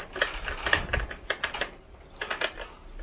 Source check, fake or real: real